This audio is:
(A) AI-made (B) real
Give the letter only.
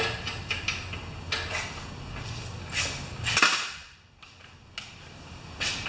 B